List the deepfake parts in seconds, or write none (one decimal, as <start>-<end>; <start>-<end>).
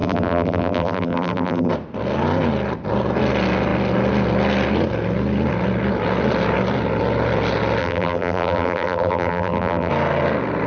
0.0-1.7; 7.8-9.9